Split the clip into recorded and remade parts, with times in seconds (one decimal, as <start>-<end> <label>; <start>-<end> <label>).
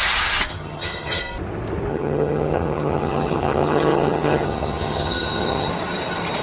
0.0-0.5 recorded; 0.5-1.2 remade; 1.2-1.9 recorded; 1.9-5.7 remade; 5.7-6.4 recorded